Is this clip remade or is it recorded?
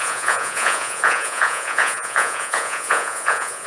remade